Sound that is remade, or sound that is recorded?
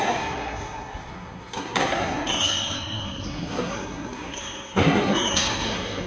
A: remade